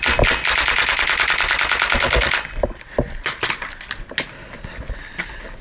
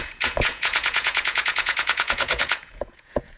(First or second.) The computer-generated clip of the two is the second